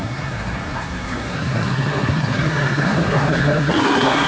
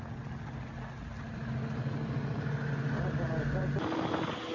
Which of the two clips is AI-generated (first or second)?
first